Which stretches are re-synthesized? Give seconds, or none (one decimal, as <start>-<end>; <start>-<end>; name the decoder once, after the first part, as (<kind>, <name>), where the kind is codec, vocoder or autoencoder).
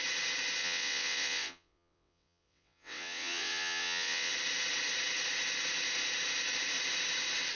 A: 0.6-4.3 (vocoder, WaveNeXt)